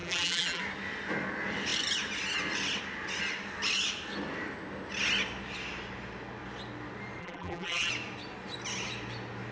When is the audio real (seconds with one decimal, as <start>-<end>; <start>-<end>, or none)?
0.6-7.2; 7.9-9.5

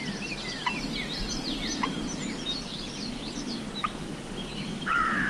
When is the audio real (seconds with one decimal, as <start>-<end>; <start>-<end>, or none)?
0.0-3.8

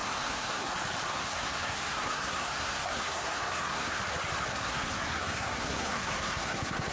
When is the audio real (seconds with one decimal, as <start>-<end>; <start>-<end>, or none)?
0.7-1.1; 4.0-4.5

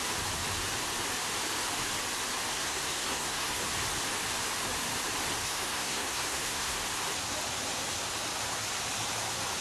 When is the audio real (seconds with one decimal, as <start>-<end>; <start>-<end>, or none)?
0.0-2.5; 3.6-5.4; 6.7-9.6